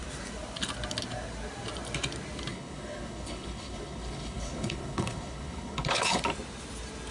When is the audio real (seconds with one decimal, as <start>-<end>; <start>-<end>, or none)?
0.0-2.5; 6.2-7.1